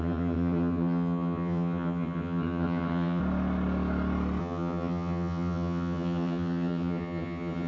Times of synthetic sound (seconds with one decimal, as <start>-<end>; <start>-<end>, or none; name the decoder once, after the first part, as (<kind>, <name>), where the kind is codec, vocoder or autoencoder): 0.0-3.2 (vocoder, HiFi-GAN); 4.4-7.7